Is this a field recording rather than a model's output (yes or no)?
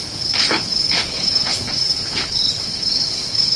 no